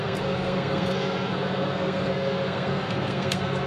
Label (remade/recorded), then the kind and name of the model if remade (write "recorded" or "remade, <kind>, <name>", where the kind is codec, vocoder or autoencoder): remade, codec, SNAC